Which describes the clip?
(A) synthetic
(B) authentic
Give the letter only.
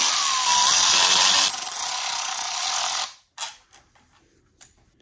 B